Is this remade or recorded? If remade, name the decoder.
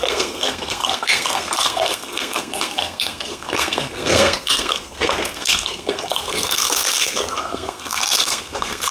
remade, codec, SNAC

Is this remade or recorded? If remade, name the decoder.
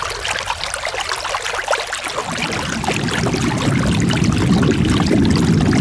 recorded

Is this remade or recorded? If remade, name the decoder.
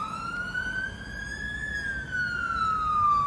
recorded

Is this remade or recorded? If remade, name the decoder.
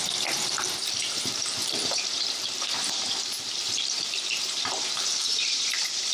remade, vocoder, BigVGAN v2